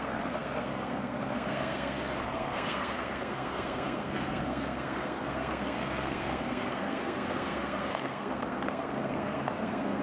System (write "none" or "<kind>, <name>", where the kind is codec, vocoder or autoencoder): codec, SNAC